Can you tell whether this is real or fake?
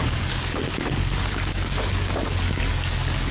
fake